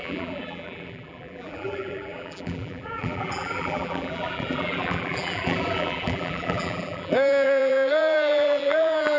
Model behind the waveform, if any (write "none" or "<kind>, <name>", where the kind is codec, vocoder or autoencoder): vocoder, BigVGAN v2